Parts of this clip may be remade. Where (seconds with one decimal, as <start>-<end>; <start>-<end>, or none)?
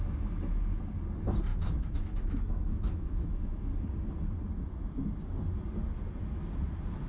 1.5-3.3